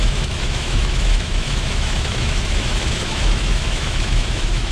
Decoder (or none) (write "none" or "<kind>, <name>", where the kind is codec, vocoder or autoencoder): autoencoder, DAC-VAE